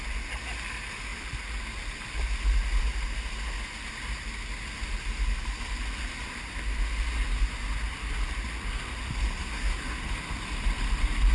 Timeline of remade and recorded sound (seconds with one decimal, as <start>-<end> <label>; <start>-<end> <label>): 0.0-9.4 recorded; 9.4-10.0 remade; 10.0-11.3 recorded